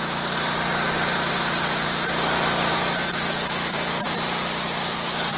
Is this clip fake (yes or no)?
no